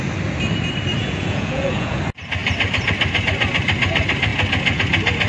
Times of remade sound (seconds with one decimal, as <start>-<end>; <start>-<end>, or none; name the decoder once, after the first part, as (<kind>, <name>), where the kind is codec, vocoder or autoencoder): 1.0-2.0 (vocoder, Vocos)